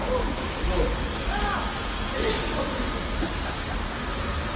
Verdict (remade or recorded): recorded